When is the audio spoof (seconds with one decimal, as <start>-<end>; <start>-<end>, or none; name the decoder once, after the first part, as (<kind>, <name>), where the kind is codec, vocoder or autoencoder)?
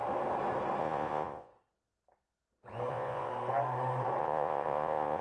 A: 0.8-1.5 (vocoder, Vocos); 2.9-3.3; 4.2-5.2